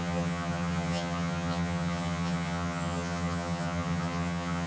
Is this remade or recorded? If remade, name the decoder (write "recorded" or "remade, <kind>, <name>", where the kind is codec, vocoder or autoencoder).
remade, vocoder, HiFi-GAN